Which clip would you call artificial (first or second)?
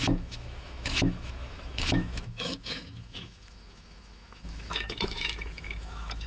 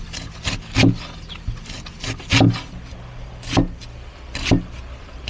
first